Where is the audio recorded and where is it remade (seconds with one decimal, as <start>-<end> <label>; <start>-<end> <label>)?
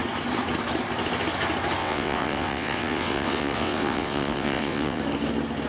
0.0-1.8 recorded; 1.8-5.0 remade; 5.0-5.7 recorded